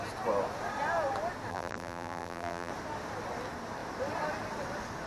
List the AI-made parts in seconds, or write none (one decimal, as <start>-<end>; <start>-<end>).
1.5-2.7